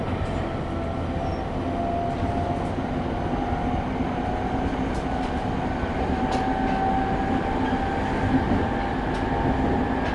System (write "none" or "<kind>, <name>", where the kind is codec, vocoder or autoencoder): none